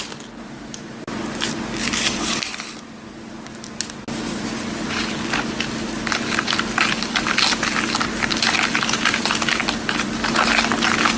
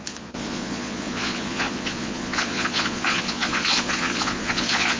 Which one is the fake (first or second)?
second